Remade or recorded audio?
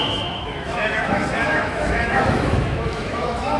remade